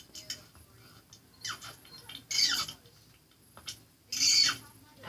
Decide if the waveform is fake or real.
real